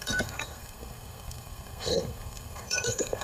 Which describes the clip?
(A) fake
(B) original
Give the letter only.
A